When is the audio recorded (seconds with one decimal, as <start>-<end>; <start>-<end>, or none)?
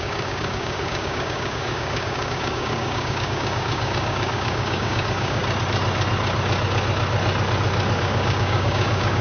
5.4-8.0